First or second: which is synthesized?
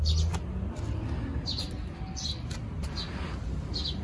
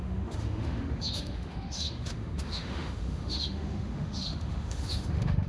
second